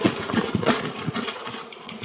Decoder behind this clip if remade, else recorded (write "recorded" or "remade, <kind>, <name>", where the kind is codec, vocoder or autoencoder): remade, vocoder, Vocos